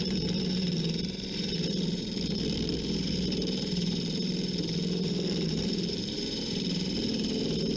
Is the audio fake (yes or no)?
yes